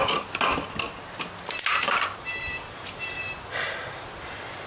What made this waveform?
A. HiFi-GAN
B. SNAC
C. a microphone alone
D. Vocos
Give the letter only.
C